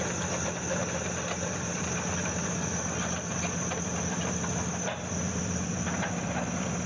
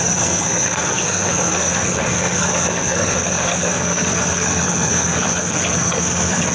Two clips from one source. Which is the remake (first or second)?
second